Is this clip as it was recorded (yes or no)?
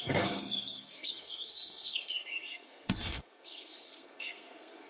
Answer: no